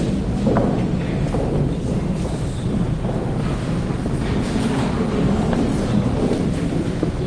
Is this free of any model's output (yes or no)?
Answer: yes